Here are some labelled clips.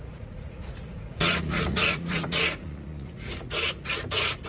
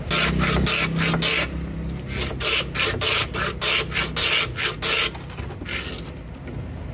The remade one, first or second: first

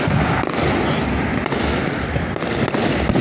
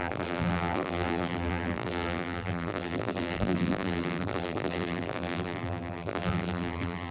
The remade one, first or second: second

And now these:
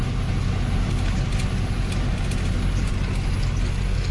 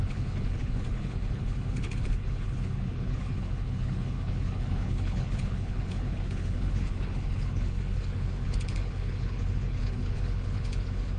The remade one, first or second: second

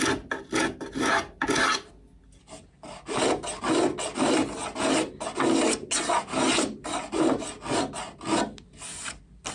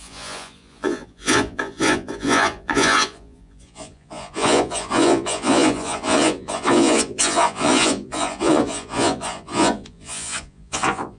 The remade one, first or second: second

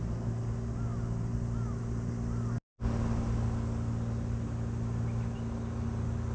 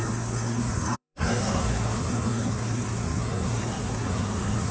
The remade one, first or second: second